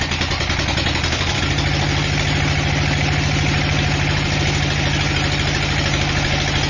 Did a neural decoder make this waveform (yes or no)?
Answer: no